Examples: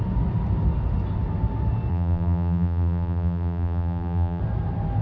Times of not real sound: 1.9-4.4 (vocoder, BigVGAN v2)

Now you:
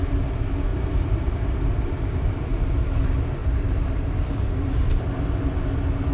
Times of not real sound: 0.7-2.6 (vocoder, BigVGAN v2); 3.4-4.5

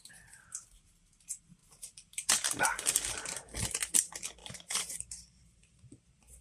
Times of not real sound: 1.6-2.3 (vocoder, BigVGAN v2); 4.4-6.4